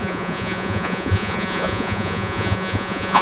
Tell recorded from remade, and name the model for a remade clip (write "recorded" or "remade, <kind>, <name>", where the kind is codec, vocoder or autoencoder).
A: remade, vocoder, Vocos